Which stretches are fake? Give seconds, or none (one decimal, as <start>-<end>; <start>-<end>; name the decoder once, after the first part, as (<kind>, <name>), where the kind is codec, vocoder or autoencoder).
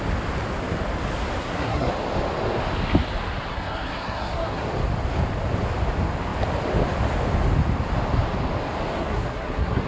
1.4-1.9 (codec, SNAC); 3.5-4.7; 9.0-9.9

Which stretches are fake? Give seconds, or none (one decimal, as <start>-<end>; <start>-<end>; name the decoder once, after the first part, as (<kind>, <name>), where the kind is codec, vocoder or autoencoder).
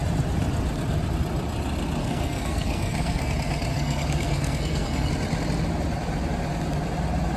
2.0-3.3 (codec, SNAC); 3.7-5.1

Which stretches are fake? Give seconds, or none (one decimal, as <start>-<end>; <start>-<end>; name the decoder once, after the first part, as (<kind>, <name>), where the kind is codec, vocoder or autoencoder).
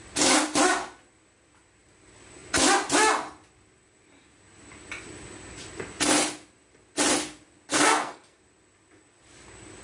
7.7-8.4 (codec, SNAC)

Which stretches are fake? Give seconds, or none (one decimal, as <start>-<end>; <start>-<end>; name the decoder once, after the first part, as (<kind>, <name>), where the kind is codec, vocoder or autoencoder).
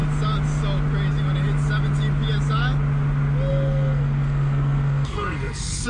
3.5-5.9 (codec, SNAC)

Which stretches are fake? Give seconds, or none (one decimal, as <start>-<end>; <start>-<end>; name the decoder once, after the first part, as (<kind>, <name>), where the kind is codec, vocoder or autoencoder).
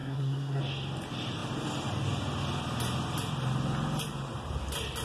0.0-0.6 (codec, SNAC)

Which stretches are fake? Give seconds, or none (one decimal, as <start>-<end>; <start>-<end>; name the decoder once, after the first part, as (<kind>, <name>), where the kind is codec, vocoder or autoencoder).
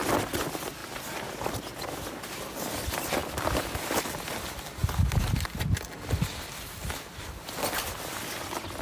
none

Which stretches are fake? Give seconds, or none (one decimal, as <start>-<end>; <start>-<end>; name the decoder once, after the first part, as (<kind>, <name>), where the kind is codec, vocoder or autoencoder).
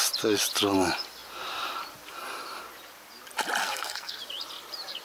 3.6-4.2 (codec, SNAC)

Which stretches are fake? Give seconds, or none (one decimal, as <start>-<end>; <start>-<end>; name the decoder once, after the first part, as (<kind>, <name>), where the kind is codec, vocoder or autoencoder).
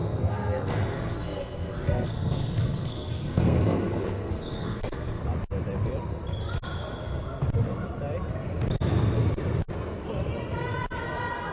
0.0-5.2 (codec, SNAC)